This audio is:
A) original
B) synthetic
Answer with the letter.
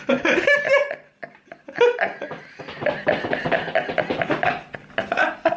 A